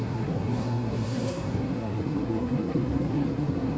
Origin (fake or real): fake